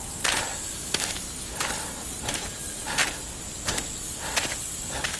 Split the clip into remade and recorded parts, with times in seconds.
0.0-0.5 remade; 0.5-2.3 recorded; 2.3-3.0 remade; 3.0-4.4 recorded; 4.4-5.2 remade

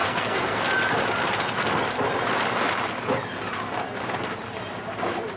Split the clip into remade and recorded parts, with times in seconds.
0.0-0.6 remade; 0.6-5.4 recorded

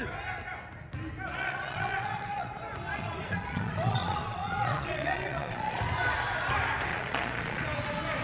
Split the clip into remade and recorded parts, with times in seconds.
0.0-1.3 recorded; 1.3-2.5 remade; 2.5-2.9 recorded; 2.9-5.8 remade; 5.8-6.9 recorded; 6.9-7.6 remade; 7.6-8.2 recorded

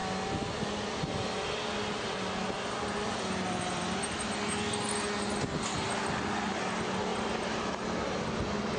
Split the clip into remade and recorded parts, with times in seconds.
0.0-8.8 recorded

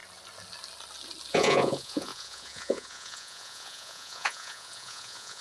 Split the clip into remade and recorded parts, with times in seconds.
0.0-1.3 recorded; 1.3-5.4 remade

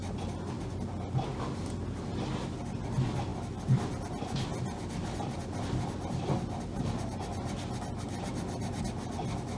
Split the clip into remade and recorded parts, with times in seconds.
0.0-9.6 recorded

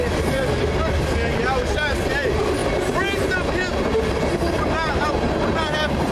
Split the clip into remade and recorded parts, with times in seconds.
0.0-6.1 recorded